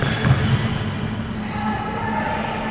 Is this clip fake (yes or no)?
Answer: no